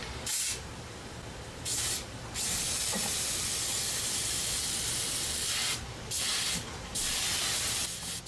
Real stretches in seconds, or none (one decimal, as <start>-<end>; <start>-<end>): 0.0-8.3